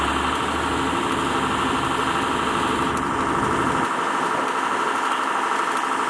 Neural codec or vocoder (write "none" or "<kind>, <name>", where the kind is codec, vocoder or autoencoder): none